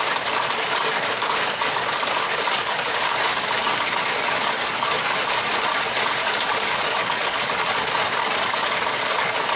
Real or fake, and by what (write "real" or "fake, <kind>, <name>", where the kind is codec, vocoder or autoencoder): fake, codec, DAC